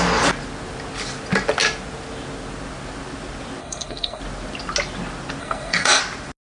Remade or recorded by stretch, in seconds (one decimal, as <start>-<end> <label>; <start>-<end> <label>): 0.0-3.6 recorded; 3.6-4.2 remade; 4.2-5.4 recorded; 5.4-6.0 remade; 6.0-6.4 recorded